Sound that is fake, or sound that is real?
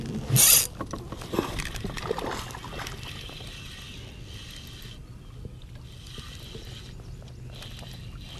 real